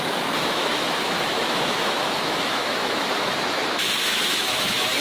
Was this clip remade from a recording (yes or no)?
yes